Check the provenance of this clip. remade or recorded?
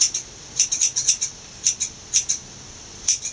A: recorded